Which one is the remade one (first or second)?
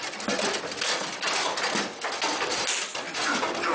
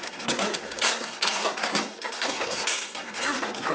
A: second